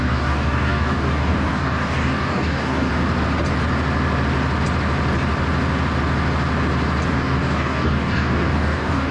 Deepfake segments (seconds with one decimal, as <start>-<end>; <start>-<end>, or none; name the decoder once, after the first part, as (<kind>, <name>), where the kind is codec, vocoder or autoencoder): 0.0-2.9 (codec, DAC); 7.1-9.1